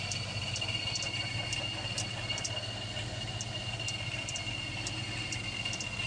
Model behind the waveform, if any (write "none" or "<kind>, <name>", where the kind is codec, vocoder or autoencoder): none